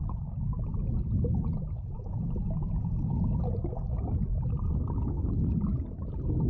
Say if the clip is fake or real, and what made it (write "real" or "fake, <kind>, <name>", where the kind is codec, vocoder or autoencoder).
real